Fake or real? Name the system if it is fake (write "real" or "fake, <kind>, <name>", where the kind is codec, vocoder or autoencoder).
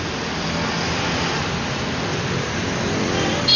real